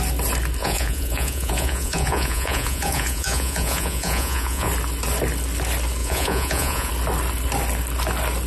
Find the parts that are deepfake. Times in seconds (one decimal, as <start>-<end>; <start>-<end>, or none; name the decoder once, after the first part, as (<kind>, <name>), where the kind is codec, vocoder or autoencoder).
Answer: 0.6-4.7 (vocoder, Vocos); 6.0-6.9